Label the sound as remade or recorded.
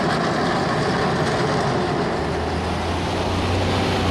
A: recorded